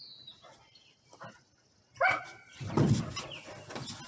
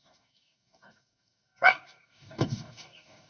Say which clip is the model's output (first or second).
second